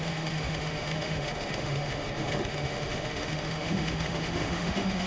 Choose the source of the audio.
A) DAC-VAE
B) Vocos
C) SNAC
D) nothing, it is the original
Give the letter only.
A